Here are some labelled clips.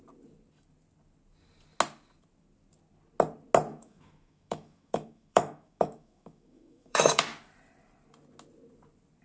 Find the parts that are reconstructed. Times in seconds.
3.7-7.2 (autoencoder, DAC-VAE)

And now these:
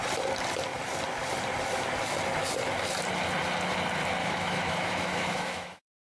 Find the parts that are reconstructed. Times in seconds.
4.2-6.1 (autoencoder, DAC-VAE)

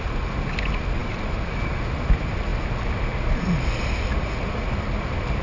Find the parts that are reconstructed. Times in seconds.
none

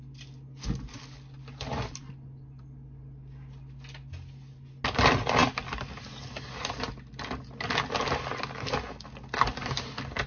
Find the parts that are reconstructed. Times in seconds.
none

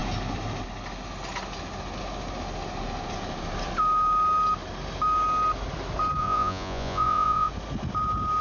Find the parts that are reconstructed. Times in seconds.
6.2-7.5 (vocoder, Vocos)

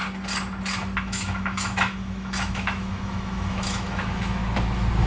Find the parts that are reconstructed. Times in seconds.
1.0-4.4 (autoencoder, DAC-VAE)

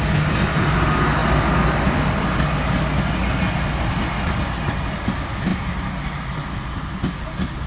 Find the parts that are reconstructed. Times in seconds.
none